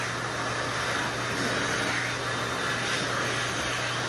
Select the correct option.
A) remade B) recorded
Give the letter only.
B